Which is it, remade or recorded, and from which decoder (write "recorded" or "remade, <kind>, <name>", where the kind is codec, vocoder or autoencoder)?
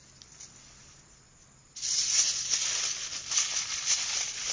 recorded